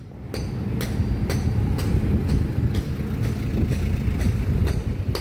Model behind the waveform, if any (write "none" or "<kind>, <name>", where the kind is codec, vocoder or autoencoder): none